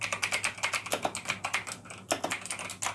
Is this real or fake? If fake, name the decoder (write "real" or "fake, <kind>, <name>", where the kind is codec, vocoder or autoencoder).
real